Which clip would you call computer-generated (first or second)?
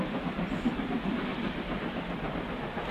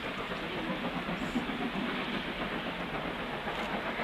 first